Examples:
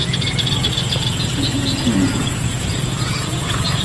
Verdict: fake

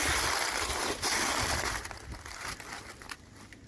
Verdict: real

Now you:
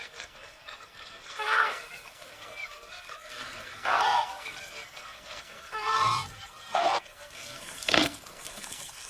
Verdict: fake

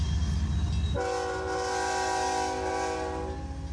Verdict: real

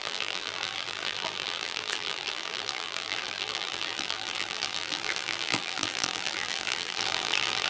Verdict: fake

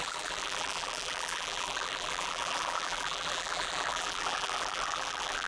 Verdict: fake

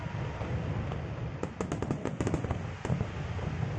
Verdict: real